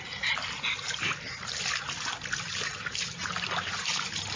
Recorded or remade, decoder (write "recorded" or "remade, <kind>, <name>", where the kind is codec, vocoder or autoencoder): recorded